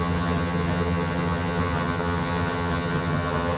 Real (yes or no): no